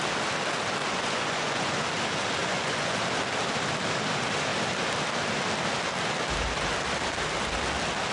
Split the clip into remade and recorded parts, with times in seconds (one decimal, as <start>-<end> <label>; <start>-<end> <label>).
0.0-0.8 recorded; 0.8-1.8 remade; 1.8-2.4 recorded; 2.4-3.0 remade; 3.0-8.1 recorded